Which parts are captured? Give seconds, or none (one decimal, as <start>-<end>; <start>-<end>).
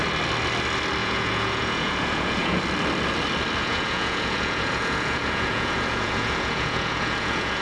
0.0-1.0; 2.6-3.6